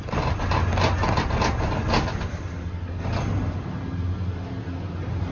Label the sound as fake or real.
real